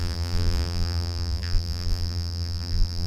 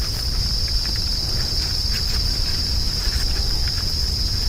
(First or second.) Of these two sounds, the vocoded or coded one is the first